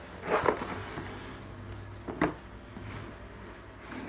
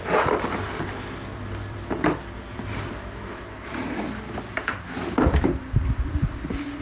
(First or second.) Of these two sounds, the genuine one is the first